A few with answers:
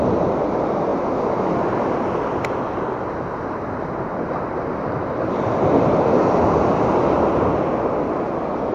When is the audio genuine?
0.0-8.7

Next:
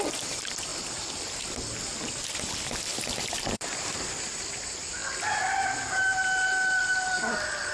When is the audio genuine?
0.7-3.4; 5.0-5.5